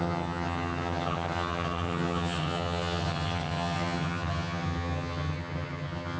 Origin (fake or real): fake